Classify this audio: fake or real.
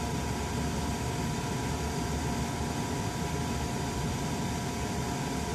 real